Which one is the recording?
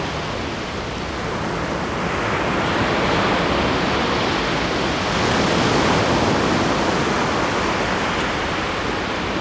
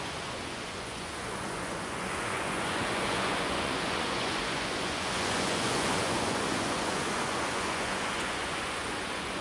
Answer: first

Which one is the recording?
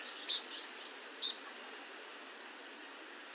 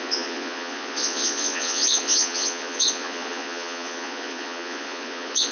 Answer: first